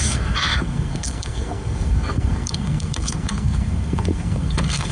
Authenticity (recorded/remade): remade